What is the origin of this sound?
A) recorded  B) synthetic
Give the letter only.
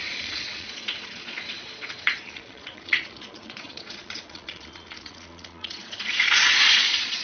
B